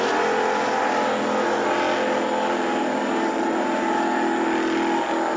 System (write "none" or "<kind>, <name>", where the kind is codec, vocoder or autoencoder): none